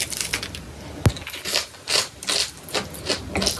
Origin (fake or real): real